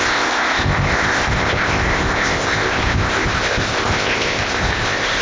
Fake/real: fake